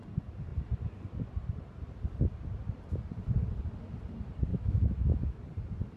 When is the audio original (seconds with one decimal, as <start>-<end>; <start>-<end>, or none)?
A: 0.0-4.5; 5.4-6.0